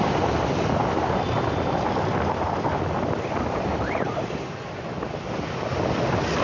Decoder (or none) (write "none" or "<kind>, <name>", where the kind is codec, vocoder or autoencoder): none